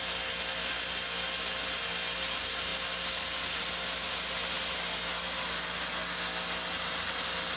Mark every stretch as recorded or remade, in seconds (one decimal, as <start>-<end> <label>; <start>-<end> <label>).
0.0-7.6 recorded